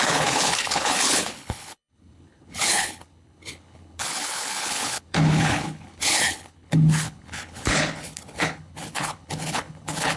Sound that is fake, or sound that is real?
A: fake